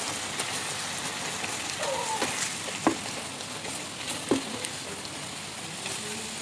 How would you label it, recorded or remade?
recorded